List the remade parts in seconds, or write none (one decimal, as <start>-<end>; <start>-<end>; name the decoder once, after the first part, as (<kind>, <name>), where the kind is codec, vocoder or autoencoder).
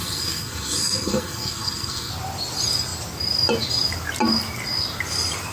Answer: 0.0-2.1 (codec, SNAC)